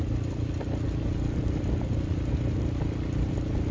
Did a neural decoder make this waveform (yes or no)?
no